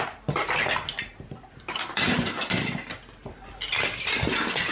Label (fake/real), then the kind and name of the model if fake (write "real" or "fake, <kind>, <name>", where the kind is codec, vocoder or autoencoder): real